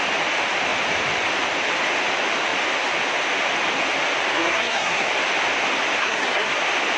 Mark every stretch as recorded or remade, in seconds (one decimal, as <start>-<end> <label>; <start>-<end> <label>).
0.0-4.3 recorded; 4.3-5.1 remade; 5.1-6.0 recorded; 6.0-6.5 remade; 6.5-7.0 recorded